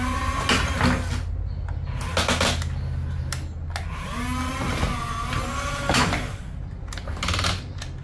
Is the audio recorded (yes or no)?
yes